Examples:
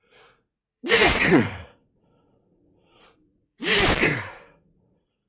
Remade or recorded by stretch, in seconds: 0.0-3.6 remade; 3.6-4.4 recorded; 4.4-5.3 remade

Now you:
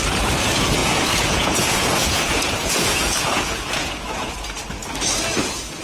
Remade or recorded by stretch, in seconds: 0.0-0.8 recorded; 0.8-4.3 remade; 4.3-5.8 recorded